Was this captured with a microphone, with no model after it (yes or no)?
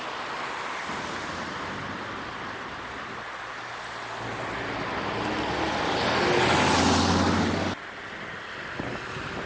yes